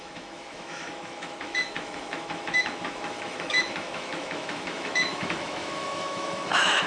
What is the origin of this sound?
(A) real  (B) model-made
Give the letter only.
B